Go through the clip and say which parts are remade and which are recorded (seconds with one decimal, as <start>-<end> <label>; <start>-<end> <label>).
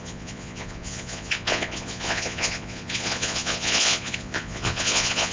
0.0-5.3 remade